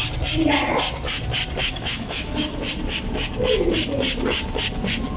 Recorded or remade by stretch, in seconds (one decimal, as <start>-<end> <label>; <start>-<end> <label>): 0.0-1.6 recorded; 1.6-2.6 remade; 2.6-5.2 recorded